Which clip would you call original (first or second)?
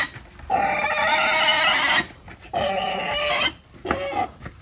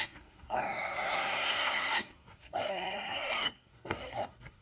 first